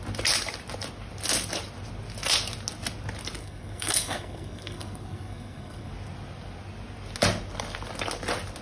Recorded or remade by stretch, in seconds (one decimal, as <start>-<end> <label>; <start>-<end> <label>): 0.0-3.4 recorded; 3.4-5.9 remade; 5.9-8.6 recorded